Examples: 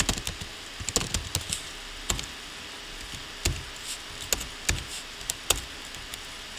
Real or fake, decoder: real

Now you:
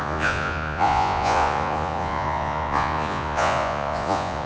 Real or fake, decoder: fake, vocoder, Vocos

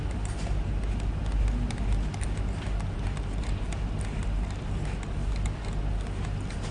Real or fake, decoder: real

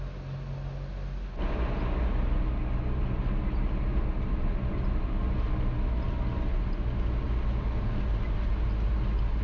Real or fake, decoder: real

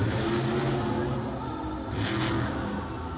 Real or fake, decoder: real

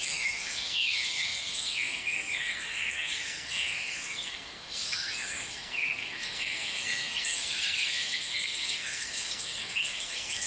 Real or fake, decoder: fake, codec, SNAC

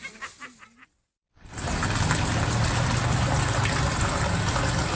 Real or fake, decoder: real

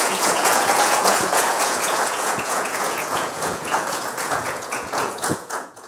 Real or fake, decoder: fake, vocoder, Vocos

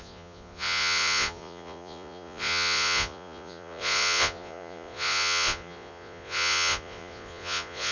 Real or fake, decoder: fake, vocoder, Vocos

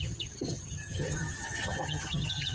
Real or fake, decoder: fake, vocoder, HiFi-GAN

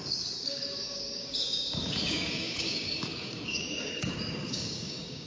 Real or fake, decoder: fake, codec, DAC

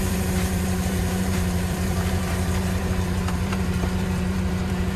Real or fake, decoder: fake, vocoder, BigVGAN v2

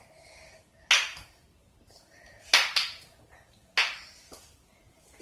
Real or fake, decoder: real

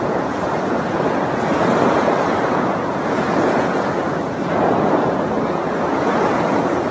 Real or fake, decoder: fake, vocoder, Vocos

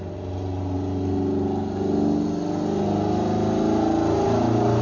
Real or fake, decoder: real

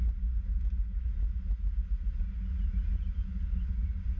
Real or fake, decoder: real